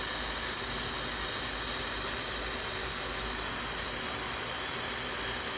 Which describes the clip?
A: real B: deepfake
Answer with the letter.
A